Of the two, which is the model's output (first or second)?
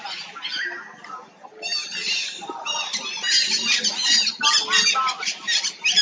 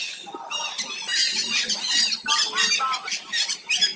second